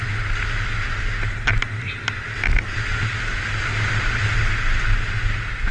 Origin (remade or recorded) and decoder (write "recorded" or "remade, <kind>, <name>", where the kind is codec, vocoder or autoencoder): recorded